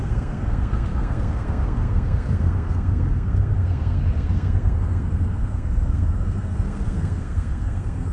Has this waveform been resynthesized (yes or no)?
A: yes